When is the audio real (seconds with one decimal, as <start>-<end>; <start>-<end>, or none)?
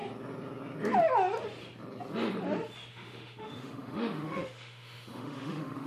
0.0-2.9